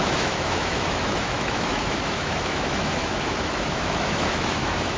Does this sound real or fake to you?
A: fake